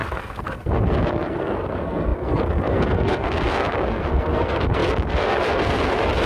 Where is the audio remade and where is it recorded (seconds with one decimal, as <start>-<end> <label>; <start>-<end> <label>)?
0.0-6.3 remade